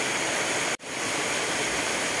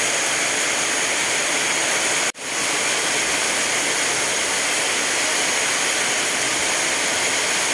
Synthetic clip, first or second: first